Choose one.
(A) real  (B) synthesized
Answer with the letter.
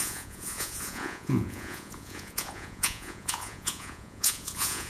B